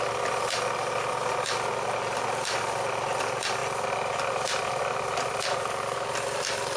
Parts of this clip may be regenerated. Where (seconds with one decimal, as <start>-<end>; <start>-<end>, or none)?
none